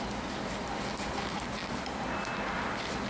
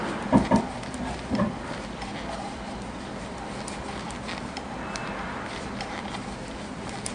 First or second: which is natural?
first